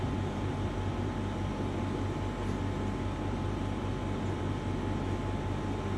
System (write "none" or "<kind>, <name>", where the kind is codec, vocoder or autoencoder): none